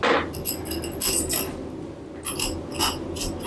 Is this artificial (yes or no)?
no